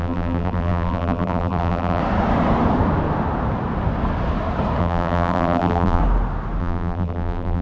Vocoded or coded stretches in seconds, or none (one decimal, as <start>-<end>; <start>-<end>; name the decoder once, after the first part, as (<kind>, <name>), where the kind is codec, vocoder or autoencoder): 0.0-2.0 (vocoder, BigVGAN v2); 4.8-6.0; 6.6-7.6